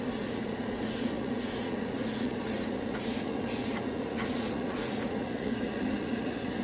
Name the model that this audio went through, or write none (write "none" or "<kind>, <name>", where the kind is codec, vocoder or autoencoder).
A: vocoder, Vocos